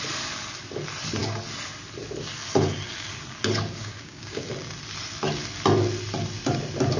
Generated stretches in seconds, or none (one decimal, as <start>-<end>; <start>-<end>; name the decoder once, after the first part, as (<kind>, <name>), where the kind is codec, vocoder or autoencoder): 3.8-4.5 (codec, DAC)